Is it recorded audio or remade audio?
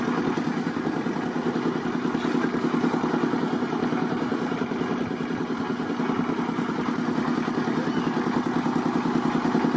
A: recorded